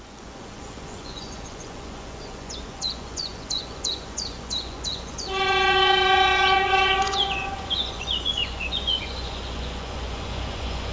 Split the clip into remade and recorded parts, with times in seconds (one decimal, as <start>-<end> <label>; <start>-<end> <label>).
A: 0.0-10.9 remade